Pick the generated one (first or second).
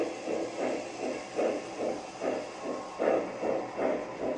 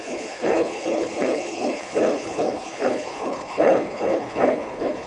second